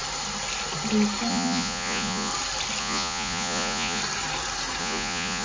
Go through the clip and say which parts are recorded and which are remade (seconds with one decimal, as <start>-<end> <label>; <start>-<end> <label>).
0.0-1.3 recorded; 1.3-2.3 remade; 2.3-2.8 recorded; 2.8-4.0 remade; 4.0-4.8 recorded; 4.8-5.4 remade